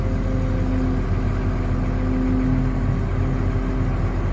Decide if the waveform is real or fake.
real